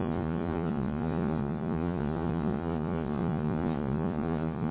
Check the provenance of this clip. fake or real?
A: fake